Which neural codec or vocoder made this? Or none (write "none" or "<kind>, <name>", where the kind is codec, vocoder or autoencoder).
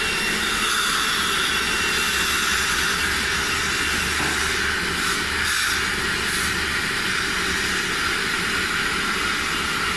none